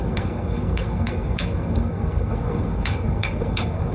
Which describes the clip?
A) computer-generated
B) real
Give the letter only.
A